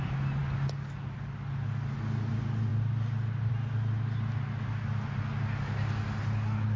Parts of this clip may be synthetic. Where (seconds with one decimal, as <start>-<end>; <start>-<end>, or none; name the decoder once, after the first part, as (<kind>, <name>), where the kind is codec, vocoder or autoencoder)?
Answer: none